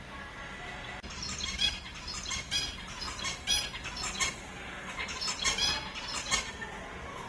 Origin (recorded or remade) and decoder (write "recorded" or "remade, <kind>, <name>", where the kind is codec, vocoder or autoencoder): recorded